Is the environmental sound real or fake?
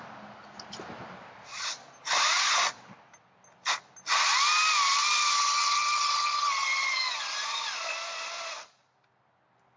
real